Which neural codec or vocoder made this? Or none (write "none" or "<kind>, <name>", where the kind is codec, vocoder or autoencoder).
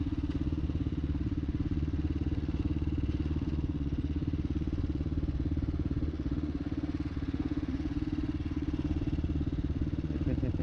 vocoder, Vocos